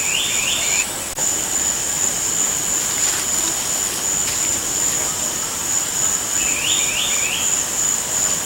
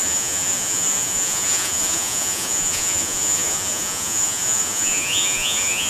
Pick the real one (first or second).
first